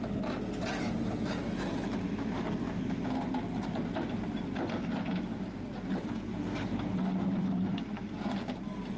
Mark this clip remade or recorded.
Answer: recorded